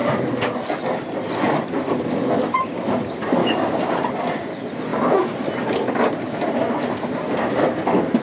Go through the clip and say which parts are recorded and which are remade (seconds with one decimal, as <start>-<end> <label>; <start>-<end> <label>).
0.0-3.4 recorded; 3.4-4.1 remade; 4.1-8.2 recorded